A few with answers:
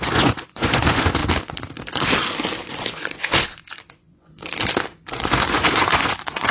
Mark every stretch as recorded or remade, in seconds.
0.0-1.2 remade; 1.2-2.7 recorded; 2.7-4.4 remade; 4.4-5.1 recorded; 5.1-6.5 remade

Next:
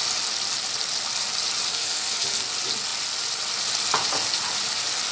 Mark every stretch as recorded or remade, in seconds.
0.0-1.7 recorded; 1.7-2.5 remade; 2.5-5.1 recorded

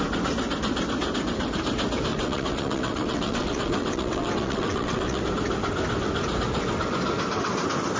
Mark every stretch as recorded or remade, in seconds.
0.0-2.1 recorded; 2.1-5.2 remade; 5.2-8.0 recorded

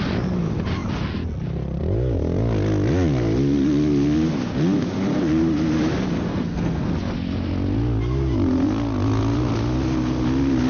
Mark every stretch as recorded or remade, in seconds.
0.0-6.3 recorded; 6.3-6.9 remade; 6.9-10.7 recorded

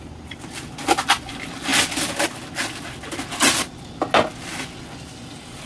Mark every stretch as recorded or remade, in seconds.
0.0-5.7 recorded

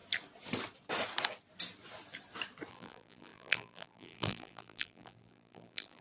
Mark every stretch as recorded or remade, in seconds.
0.0-2.7 recorded; 2.7-6.0 remade

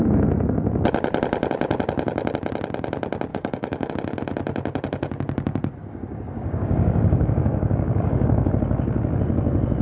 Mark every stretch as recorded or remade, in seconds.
0.0-3.3 recorded; 3.3-3.9 remade; 3.9-5.8 recorded; 5.8-8.5 remade; 8.5-9.8 recorded